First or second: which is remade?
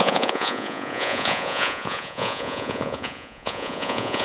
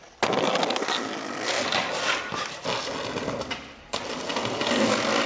first